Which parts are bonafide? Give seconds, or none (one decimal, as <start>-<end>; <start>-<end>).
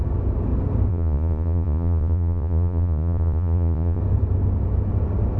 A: 0.0-0.9; 4.0-5.4